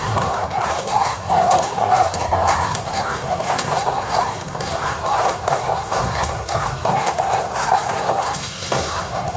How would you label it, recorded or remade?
remade